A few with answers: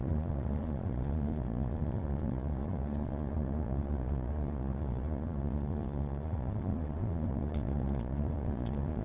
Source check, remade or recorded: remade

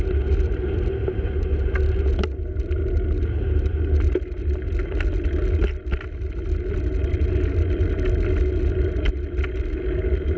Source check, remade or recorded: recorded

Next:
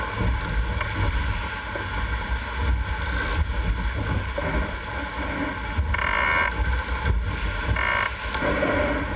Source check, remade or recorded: recorded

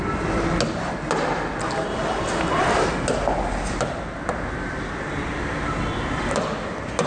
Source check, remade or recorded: recorded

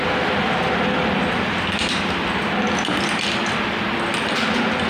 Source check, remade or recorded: recorded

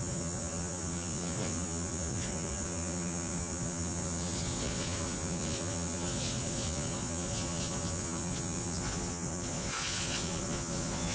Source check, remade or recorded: remade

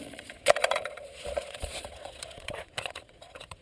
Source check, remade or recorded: remade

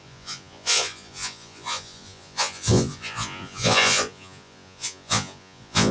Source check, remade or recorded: remade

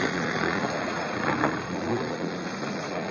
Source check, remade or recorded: remade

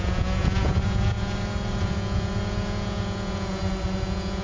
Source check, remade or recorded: remade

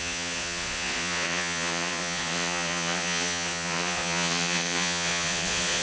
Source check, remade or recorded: remade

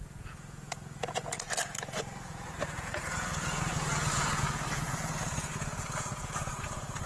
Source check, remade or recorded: remade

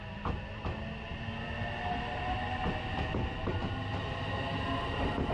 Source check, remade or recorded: recorded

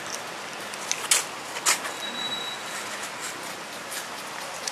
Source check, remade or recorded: recorded